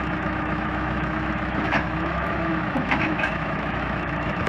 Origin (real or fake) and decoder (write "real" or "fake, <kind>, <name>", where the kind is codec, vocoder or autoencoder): fake, autoencoder, DAC-VAE